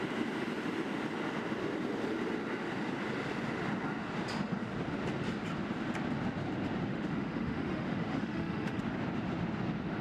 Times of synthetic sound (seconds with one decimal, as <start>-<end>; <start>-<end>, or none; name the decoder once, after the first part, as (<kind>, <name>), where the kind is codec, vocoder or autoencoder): 6.9-8.8 (autoencoder, DAC-VAE)